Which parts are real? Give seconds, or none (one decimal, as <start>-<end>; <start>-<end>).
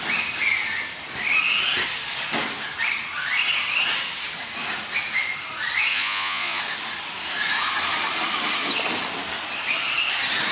0.0-5.9; 6.6-10.5